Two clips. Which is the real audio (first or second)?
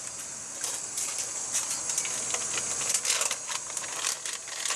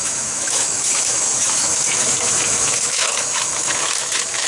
first